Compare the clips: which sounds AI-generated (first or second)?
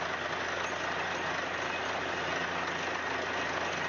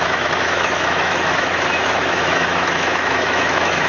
second